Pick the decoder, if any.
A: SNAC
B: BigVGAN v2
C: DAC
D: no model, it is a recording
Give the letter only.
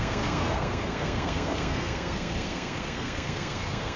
A